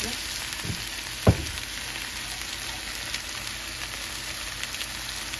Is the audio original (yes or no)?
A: yes